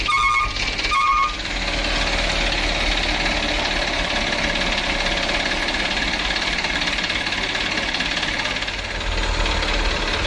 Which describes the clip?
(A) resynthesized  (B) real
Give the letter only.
B